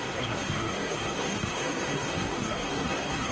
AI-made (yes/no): yes